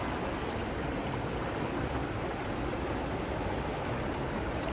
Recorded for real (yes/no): yes